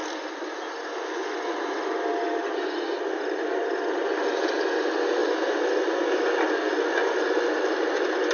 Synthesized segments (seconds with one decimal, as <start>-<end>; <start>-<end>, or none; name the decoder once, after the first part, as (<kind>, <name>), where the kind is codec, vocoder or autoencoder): 7.0-7.7 (vocoder, BigVGAN v2)